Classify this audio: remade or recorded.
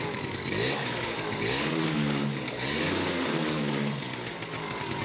remade